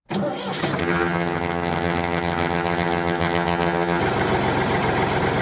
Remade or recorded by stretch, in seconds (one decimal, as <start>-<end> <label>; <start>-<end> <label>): 0.0-0.8 recorded; 0.8-4.0 remade; 4.0-5.4 recorded